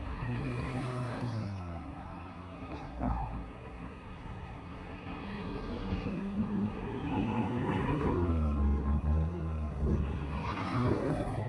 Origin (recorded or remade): remade